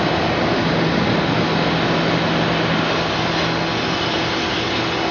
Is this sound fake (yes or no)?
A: no